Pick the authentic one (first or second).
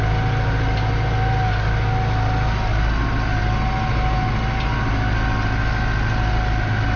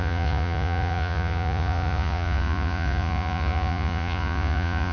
first